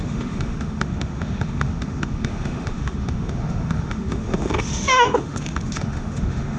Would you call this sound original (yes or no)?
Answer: no